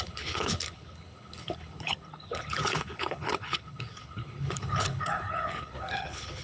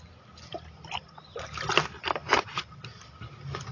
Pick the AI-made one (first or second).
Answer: first